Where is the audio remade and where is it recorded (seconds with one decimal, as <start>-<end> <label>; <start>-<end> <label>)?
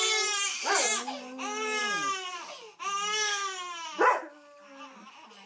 0.0-5.5 recorded